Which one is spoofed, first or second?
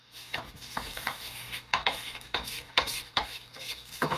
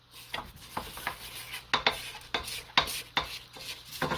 first